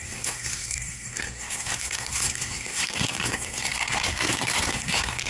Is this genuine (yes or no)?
no